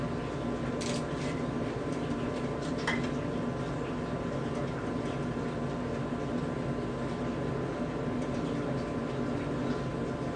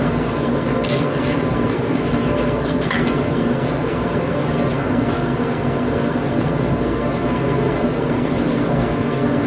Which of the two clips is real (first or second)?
first